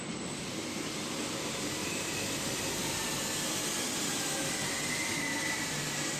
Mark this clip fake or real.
real